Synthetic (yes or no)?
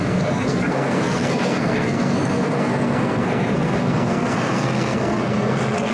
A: yes